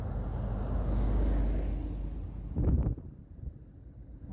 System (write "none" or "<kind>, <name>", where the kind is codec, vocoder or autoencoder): none